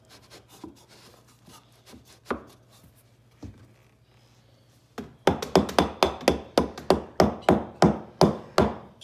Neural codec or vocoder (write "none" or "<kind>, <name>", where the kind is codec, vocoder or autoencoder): none